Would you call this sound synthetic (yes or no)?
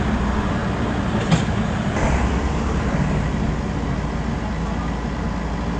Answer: no